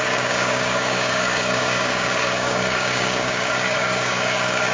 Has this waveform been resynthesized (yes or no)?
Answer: yes